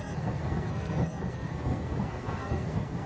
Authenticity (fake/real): fake